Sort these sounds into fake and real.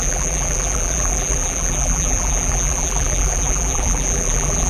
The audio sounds fake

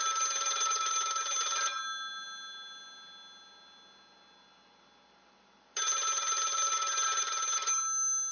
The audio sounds real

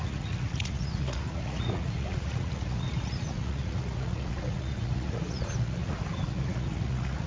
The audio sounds fake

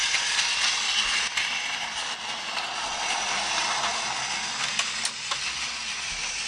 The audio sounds real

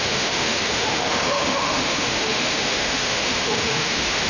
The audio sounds fake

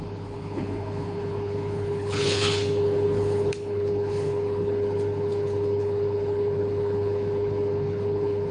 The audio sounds fake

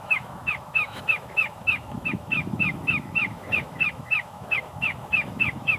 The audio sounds fake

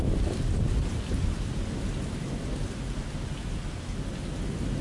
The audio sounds real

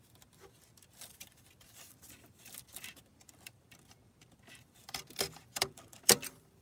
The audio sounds fake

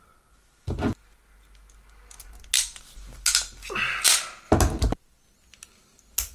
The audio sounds real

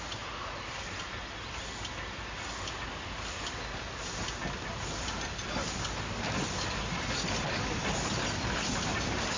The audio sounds real